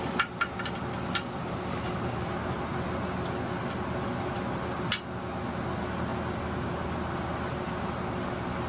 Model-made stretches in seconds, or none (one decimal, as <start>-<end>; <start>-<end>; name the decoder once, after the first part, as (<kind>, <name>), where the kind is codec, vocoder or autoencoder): none